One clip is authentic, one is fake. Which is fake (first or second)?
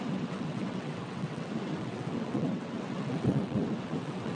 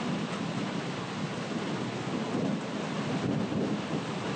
first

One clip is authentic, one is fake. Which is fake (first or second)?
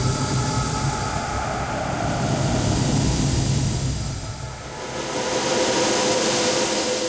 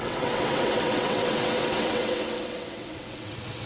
second